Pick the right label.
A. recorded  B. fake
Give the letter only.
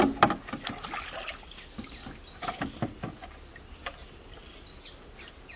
A